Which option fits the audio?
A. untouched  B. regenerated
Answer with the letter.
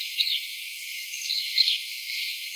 B